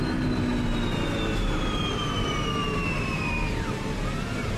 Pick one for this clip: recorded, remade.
recorded